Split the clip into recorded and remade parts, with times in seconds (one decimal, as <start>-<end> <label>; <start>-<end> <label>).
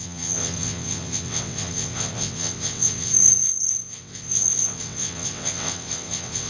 0.0-6.5 remade